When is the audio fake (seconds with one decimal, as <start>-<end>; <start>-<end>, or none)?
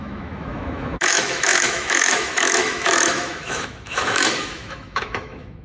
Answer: 0.0-5.6